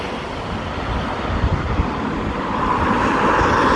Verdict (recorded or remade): recorded